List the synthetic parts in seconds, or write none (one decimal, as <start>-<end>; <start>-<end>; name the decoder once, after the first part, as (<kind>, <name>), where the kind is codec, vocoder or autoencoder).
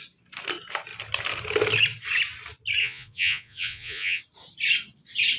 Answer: 2.8-4.2 (vocoder, Vocos)